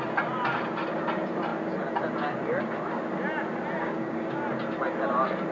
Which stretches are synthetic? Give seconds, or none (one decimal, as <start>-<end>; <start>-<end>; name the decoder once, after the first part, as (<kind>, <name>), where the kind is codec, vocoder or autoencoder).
3.8-4.4 (codec, DAC)